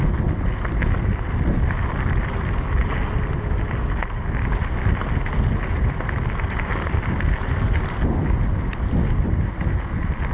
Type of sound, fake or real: real